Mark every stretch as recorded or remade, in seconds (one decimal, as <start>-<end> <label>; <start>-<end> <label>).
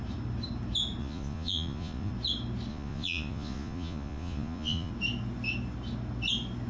0.0-1.0 recorded; 1.0-2.1 remade; 2.1-2.7 recorded; 2.7-4.9 remade; 4.9-6.7 recorded